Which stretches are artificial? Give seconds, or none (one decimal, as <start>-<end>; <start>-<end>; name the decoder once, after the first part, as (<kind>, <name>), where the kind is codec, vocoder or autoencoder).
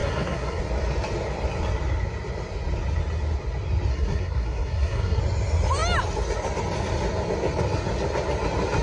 0.0-0.6 (codec, SNAC); 3.9-5.2